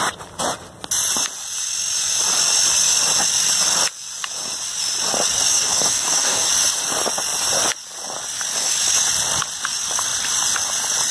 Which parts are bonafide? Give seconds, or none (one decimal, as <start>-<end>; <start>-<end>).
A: 0.0-5.5; 6.5-11.1